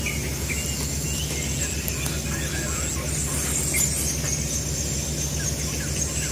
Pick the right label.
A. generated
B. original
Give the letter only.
B